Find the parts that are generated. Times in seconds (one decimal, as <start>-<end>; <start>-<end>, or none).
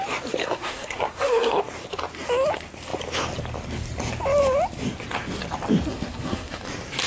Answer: 0.4-1.6; 5.9-6.6